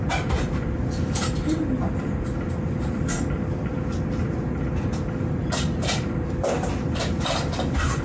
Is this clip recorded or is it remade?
recorded